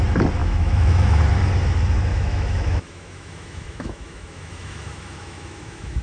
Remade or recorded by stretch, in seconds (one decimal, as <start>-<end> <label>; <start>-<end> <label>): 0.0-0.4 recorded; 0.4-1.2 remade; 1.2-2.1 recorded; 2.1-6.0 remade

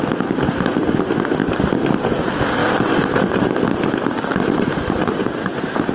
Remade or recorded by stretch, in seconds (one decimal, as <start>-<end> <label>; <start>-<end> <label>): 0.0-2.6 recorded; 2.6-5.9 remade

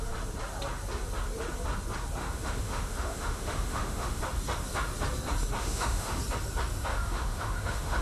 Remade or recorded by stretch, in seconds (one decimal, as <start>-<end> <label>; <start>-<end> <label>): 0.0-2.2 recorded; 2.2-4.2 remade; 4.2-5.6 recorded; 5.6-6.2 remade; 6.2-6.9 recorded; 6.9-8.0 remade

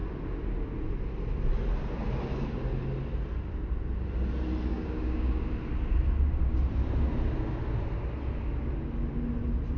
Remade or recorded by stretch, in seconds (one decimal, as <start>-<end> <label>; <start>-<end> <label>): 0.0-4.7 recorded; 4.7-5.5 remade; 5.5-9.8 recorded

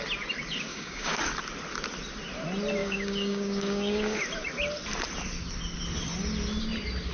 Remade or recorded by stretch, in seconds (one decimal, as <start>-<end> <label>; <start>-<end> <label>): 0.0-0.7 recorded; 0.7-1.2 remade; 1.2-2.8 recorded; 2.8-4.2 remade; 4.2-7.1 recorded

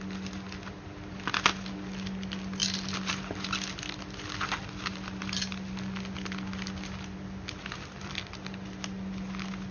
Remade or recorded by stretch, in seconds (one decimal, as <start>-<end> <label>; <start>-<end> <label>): 0.0-9.7 recorded

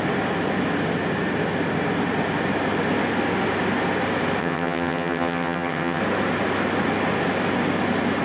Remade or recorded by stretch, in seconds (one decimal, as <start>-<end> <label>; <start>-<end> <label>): 0.0-4.4 recorded; 4.4-6.0 remade; 6.0-8.2 recorded

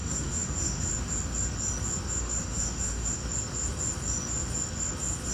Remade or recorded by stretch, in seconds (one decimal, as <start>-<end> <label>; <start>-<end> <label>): 0.0-0.9 remade; 0.9-2.2 recorded; 2.2-3.2 remade; 3.2-5.3 recorded